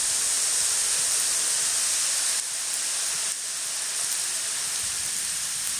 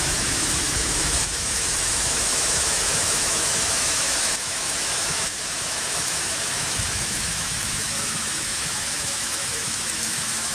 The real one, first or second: first